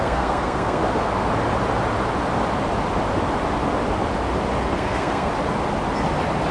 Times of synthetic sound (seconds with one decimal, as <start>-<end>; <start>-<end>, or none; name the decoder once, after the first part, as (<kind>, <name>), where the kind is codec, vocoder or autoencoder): 0.0-0.8 (codec, SNAC); 4.7-5.3